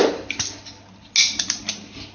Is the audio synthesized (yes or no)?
no